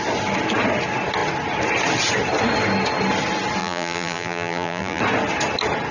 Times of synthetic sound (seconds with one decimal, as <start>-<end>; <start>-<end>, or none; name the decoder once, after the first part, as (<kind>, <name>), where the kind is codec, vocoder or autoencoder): 3.6-5.0 (vocoder, BigVGAN v2)